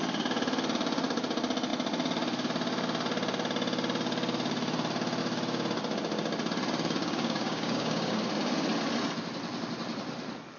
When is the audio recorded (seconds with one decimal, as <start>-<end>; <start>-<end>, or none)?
0.0-7.0; 8.2-10.6